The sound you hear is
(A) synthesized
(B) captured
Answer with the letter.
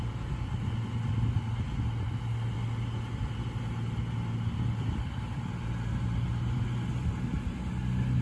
B